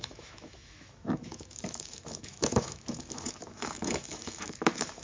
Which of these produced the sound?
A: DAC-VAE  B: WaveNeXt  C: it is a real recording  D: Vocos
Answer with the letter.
A